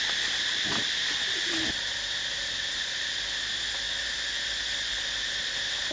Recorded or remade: recorded